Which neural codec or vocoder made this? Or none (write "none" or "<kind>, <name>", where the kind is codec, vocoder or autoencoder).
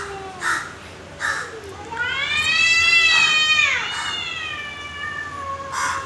none